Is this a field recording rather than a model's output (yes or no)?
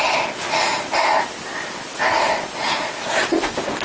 yes